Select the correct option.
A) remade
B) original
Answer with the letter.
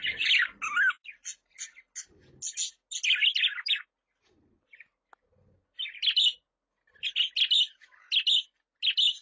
B